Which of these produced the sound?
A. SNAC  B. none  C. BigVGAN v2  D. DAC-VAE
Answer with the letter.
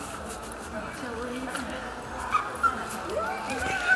B